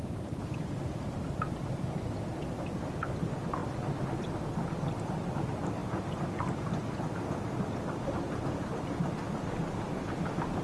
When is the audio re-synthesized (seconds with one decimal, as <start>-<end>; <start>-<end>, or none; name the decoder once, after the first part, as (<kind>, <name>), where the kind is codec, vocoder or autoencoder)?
none